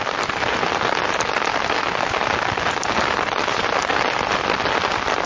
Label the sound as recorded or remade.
recorded